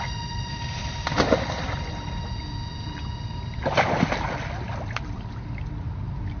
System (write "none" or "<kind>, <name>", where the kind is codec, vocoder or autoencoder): none